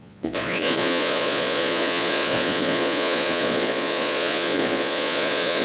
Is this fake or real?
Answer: fake